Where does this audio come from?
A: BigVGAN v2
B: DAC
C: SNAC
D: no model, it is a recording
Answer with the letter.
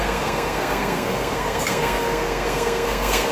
C